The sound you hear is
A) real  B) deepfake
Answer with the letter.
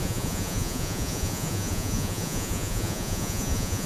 B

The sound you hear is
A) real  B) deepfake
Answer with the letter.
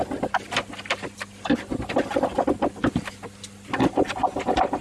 A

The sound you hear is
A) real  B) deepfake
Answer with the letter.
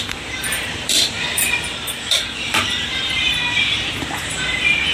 B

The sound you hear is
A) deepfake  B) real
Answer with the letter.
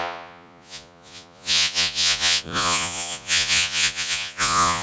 A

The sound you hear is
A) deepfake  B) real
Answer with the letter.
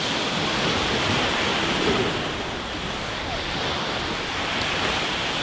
B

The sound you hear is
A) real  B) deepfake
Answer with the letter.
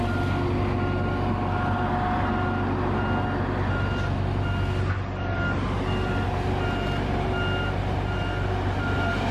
A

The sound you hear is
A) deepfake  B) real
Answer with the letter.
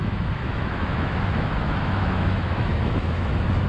A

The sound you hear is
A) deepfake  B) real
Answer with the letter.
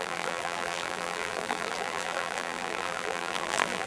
A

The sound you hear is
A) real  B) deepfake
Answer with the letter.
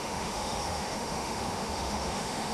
B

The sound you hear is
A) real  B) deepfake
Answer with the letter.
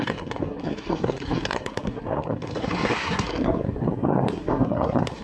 B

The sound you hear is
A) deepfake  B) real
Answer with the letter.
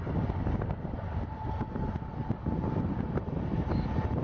B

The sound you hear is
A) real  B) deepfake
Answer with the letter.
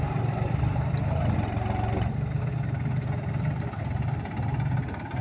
A